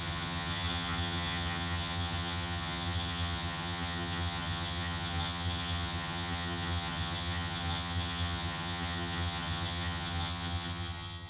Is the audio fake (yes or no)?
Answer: yes